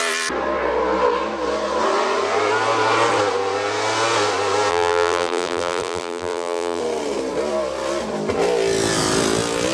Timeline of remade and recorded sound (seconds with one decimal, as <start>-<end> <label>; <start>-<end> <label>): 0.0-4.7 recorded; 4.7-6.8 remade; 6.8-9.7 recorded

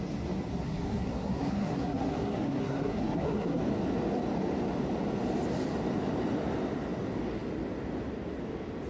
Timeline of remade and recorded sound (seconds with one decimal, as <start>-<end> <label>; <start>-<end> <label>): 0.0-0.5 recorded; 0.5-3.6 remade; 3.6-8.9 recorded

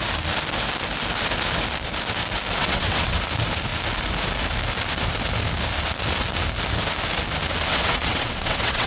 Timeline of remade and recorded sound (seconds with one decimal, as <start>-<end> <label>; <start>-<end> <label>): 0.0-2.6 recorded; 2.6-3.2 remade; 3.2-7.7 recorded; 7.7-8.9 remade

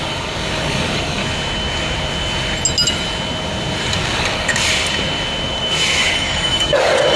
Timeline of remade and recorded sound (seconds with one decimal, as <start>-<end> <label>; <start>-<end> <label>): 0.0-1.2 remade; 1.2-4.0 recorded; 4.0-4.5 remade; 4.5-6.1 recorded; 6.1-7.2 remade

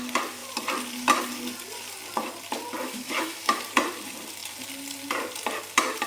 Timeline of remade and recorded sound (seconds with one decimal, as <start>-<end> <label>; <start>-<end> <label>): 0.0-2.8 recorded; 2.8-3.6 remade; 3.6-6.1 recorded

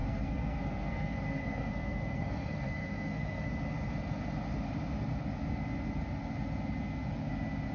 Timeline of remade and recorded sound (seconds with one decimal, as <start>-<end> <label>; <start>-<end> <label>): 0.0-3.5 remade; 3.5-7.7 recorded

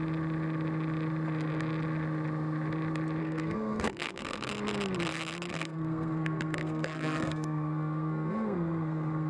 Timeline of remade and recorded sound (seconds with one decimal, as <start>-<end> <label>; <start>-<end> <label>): 0.0-3.2 recorded; 3.2-4.5 remade; 4.5-5.5 recorded; 5.5-9.3 remade